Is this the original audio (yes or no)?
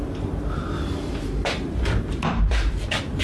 no